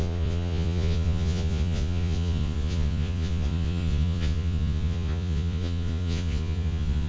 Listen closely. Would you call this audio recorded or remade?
remade